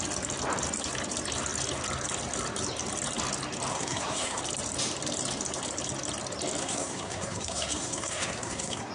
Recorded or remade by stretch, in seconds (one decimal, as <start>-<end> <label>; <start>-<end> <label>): 0.0-3.7 recorded; 3.7-4.4 remade; 4.4-6.6 recorded; 6.6-8.9 remade